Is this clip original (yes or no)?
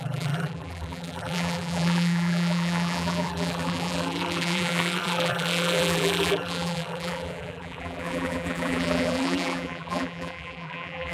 no